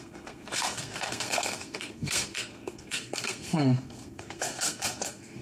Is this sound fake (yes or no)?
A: yes